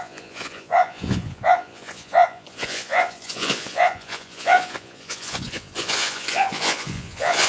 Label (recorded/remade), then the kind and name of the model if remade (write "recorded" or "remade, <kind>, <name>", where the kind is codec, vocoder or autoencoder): remade, vocoder, Vocos